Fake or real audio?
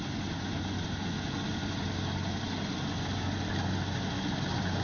real